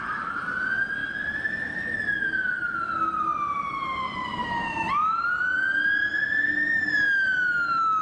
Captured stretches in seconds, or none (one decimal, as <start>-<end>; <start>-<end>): 0.0-8.0